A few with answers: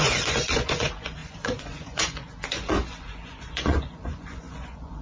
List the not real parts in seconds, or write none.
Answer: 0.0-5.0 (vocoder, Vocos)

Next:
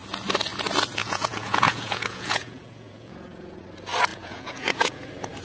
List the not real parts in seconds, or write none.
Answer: 1.0-3.6 (vocoder, Vocos); 4.1-5.0

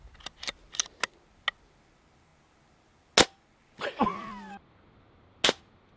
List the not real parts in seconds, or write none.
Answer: none

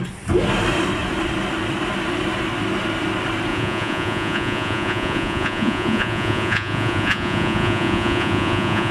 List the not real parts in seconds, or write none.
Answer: 3.5-8.9 (vocoder, Vocos)

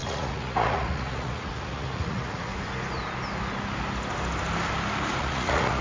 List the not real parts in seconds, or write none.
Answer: 0.0-2.5 (vocoder, Vocos); 5.2-5.8

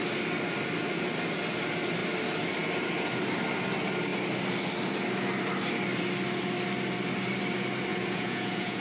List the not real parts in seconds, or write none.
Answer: 7.9-8.8 (vocoder, Vocos)

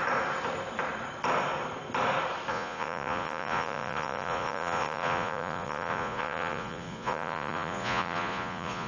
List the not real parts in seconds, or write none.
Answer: 2.5-8.9 (vocoder, Vocos)